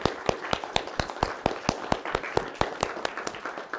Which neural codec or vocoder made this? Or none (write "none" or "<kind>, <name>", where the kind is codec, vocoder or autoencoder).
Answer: none